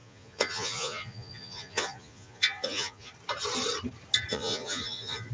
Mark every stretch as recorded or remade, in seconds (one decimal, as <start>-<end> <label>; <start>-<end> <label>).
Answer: 0.0-3.1 remade; 3.1-4.3 recorded; 4.3-5.3 remade